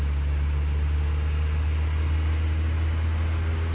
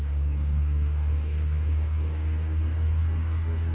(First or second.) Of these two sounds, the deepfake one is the second